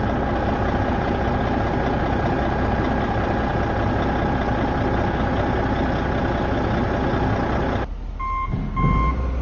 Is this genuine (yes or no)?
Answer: yes